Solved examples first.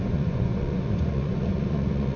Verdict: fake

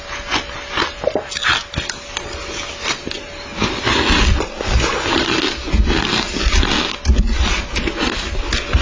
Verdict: real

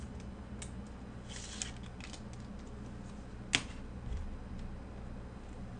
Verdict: real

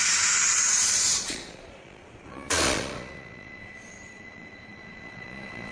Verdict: fake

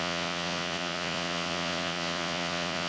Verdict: fake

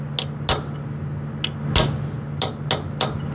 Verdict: real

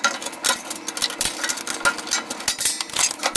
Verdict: real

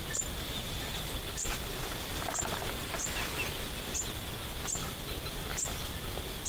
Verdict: real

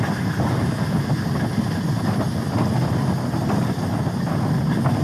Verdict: real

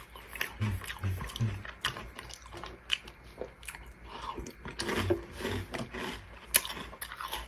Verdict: real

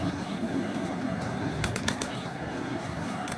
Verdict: fake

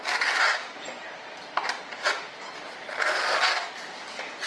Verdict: real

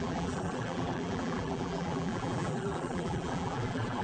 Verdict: fake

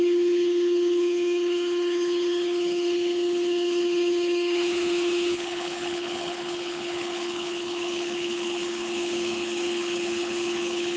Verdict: fake